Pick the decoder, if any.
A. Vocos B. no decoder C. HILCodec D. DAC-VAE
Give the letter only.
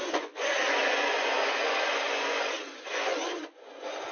A